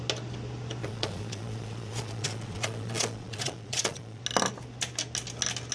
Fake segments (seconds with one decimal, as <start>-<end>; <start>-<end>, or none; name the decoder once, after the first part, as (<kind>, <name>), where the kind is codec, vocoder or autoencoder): 0.8-4.2 (vocoder, Vocos)